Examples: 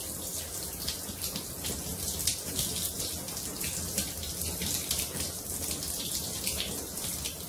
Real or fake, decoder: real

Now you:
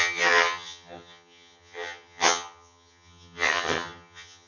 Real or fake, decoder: fake, vocoder, HiFi-GAN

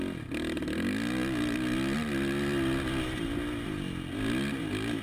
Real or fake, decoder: real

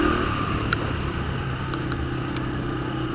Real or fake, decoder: real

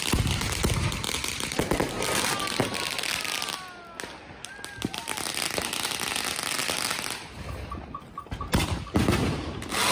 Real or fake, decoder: real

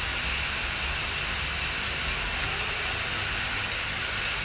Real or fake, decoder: real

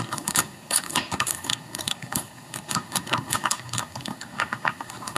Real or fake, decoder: fake, codec, SNAC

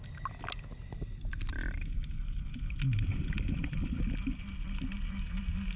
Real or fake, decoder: real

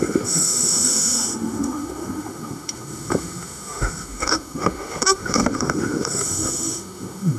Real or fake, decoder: fake, autoencoder, DAC-VAE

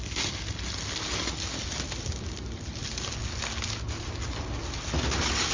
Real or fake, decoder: real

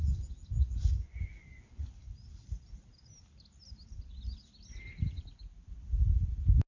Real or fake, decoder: real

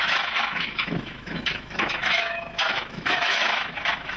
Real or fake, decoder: fake, autoencoder, DAC-VAE